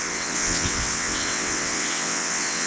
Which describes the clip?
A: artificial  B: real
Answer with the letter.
A